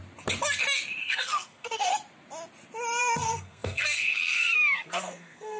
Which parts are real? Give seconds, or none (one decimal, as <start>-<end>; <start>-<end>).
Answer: 0.0-1.0; 1.9-3.0